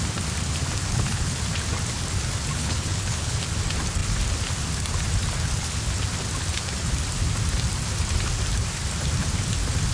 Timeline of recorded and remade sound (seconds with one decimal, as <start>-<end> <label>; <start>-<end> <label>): 0.0-0.8 recorded; 0.8-1.4 remade; 1.4-2.6 recorded; 2.6-3.4 remade; 3.4-9.9 recorded